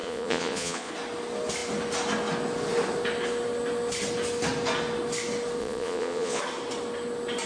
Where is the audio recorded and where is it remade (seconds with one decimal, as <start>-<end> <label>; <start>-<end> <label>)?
0.0-0.9 remade; 0.9-5.6 recorded; 5.6-6.4 remade; 6.4-7.5 recorded